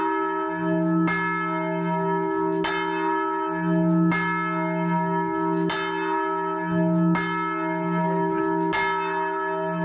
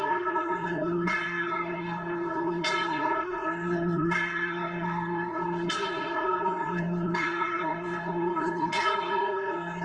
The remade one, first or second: second